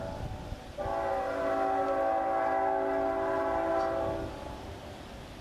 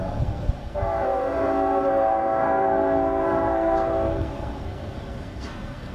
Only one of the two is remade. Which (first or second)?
second